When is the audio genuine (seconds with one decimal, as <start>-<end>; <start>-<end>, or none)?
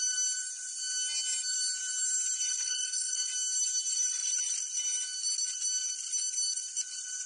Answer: 0.0-2.5; 3.3-7.3